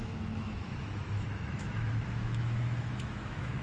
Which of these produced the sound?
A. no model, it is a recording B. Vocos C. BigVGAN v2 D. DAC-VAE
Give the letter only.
D